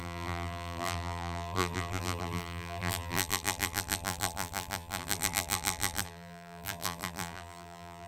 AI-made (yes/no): yes